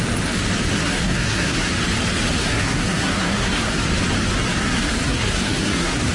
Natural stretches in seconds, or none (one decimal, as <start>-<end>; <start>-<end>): 0.0-0.7; 1.7-2.4; 3.7-4.6